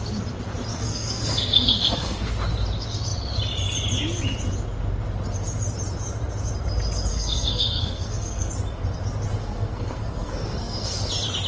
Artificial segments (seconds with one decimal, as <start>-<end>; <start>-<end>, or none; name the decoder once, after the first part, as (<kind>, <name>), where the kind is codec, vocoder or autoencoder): 0.7-2.3 (codec, SNAC); 7.1-8.5; 9.4-11.0